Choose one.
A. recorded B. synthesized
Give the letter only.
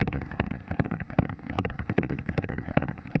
B